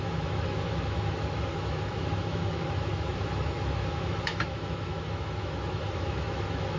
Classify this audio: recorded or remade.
remade